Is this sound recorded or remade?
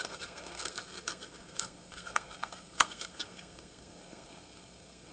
remade